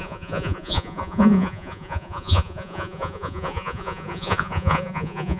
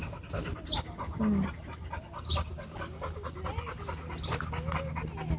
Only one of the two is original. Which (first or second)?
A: second